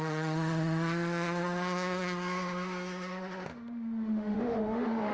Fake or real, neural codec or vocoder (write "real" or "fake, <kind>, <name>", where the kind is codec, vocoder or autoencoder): fake, autoencoder, DAC-VAE